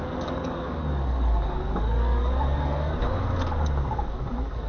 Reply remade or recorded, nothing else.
remade